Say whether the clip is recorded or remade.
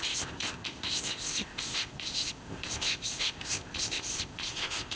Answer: remade